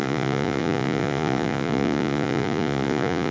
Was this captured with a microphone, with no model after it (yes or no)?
no